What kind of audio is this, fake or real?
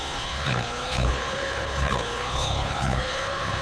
fake